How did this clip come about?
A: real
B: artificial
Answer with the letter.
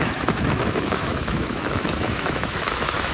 B